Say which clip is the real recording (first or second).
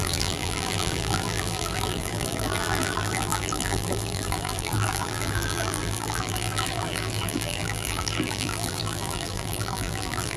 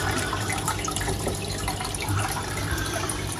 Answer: second